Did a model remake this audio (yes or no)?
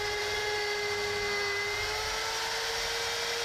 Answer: no